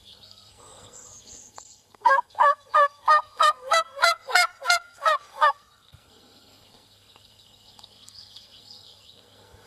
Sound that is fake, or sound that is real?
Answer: fake